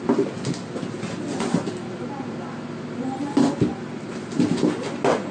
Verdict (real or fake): real